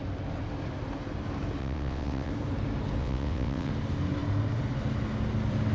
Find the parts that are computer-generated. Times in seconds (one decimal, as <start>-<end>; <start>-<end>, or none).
1.6-2.3; 3.0-3.7